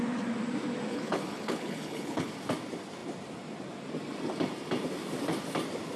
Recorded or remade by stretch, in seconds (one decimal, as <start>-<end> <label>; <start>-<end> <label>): 0.0-0.9 recorded; 0.9-2.3 remade; 2.3-6.0 recorded